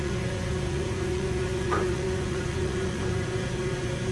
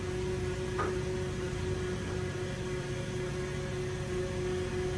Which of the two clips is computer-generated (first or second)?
first